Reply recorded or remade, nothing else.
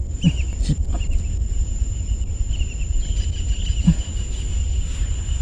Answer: recorded